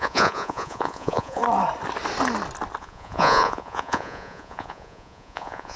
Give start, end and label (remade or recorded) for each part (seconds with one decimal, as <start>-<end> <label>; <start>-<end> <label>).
0.0-1.4 remade; 1.4-2.8 recorded; 2.8-5.8 remade